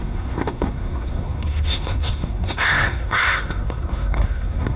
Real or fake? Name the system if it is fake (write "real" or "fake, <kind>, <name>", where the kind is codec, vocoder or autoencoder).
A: fake, codec, SNAC